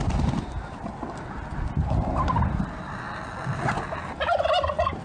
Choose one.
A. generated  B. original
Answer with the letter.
B